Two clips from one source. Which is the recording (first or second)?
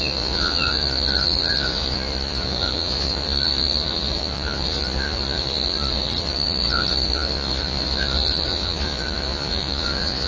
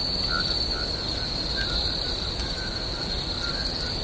second